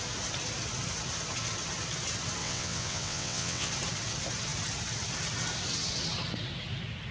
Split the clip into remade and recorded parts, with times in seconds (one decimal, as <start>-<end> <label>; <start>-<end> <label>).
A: 0.0-2.4 recorded; 2.4-3.7 remade; 3.7-7.1 recorded